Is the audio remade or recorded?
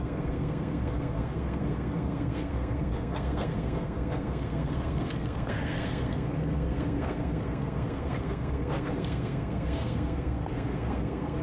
remade